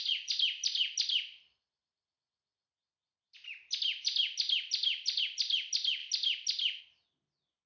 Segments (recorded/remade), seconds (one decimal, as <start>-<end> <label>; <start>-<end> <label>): 0.0-7.7 recorded